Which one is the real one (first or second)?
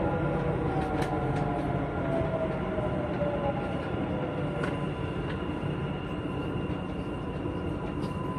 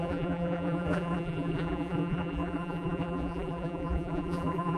first